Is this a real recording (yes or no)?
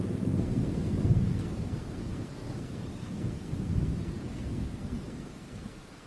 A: no